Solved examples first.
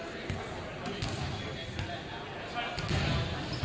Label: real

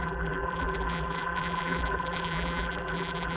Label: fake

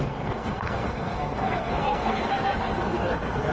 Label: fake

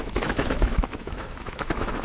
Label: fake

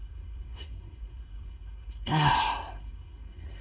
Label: fake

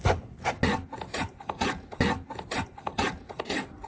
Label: real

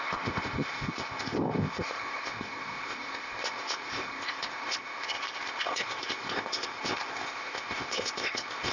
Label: fake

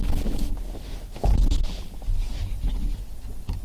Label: real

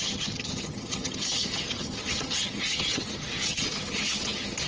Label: fake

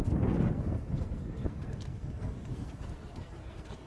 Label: fake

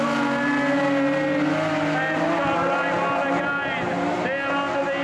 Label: real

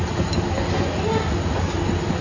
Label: real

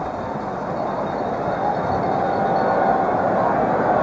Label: real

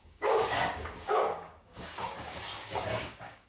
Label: fake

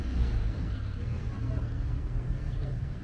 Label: fake